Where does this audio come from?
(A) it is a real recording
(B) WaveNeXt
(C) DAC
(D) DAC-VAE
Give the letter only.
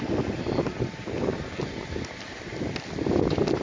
A